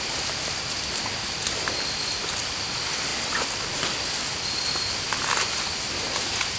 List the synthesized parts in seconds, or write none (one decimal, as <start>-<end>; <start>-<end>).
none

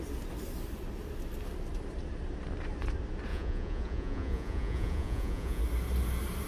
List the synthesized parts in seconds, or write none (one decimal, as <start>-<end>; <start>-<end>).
3.3-5.6

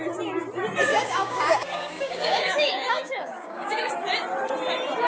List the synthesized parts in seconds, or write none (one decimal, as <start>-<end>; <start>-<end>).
0.9-3.9

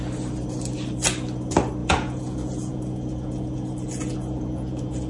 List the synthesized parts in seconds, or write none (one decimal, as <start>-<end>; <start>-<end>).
1.8-5.1